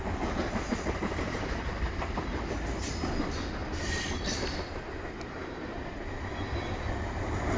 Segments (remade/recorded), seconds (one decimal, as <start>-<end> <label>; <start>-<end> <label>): 0.0-3.6 recorded; 3.6-5.9 remade; 5.9-7.6 recorded

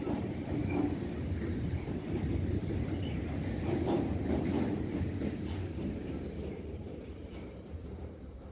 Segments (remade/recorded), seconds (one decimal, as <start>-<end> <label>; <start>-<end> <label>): 0.0-0.6 remade; 0.6-3.2 recorded; 3.2-8.5 remade